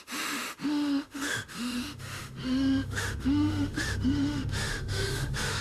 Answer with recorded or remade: remade